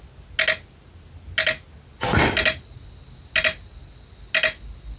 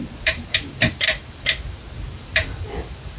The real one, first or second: first